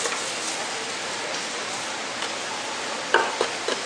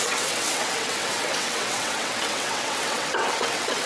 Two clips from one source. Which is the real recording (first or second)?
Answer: first